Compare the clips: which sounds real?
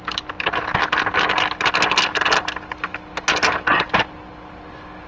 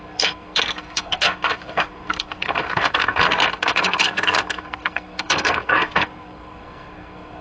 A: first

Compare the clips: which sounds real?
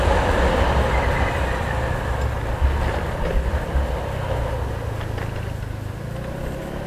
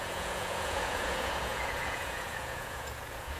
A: first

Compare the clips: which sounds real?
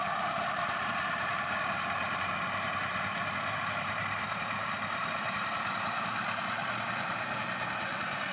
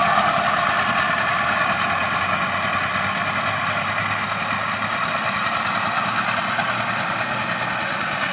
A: second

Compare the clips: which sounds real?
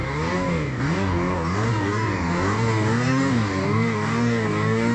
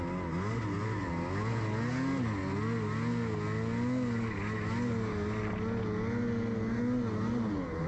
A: second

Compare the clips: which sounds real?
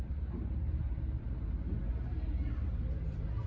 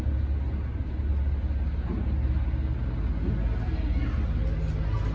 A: second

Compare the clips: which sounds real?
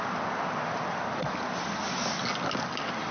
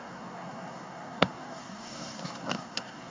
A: first